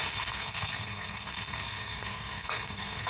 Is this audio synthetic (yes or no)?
yes